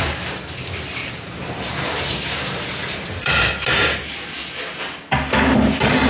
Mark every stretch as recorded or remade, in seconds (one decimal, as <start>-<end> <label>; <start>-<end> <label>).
0.0-1.0 recorded; 1.0-1.9 remade; 1.9-2.8 recorded; 2.8-4.0 remade; 4.0-6.1 recorded